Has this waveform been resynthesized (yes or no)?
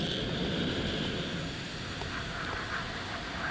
no